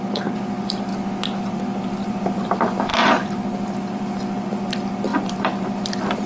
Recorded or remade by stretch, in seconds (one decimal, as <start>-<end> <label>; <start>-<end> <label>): 0.0-0.9 remade; 0.9-1.4 recorded; 1.4-2.9 remade; 2.9-3.9 recorded; 3.9-6.3 remade